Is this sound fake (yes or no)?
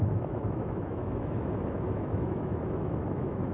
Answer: yes